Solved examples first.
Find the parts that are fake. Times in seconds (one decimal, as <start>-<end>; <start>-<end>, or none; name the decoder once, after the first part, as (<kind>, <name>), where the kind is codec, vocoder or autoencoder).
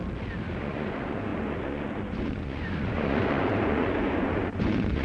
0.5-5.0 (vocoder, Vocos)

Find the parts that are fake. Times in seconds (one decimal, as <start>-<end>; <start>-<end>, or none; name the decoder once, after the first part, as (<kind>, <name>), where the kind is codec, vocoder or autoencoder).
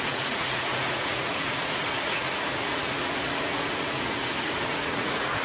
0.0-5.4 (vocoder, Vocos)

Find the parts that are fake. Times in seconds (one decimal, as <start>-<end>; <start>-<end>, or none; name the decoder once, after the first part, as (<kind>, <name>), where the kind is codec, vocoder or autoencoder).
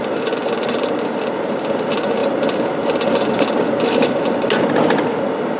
none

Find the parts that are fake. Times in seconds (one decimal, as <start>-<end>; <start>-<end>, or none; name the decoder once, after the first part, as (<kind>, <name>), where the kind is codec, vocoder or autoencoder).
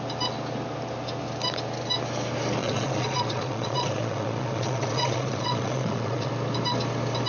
2.6-6.3 (vocoder, Vocos)